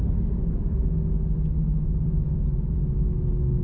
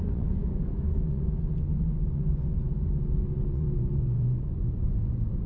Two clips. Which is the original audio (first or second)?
first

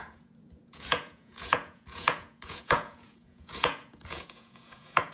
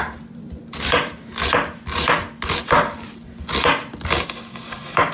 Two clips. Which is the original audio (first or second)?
second